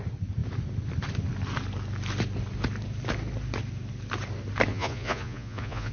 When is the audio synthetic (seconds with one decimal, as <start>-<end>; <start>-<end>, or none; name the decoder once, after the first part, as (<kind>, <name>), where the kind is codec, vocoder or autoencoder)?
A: 4.7-5.9 (vocoder, Vocos)